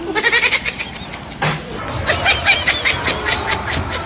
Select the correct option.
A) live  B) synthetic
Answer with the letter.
A